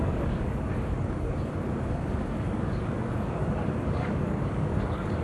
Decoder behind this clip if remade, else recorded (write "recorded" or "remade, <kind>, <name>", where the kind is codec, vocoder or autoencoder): remade, codec, DAC